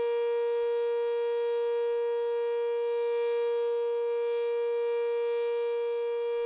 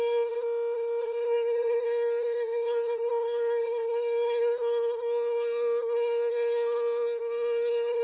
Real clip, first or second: first